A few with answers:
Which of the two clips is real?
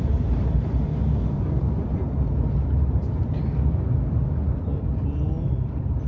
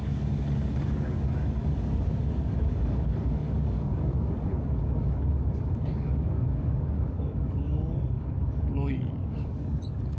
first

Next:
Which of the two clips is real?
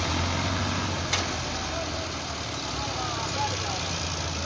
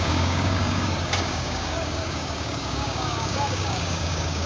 first